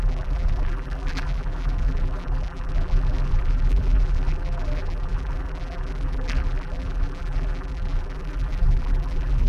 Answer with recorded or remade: remade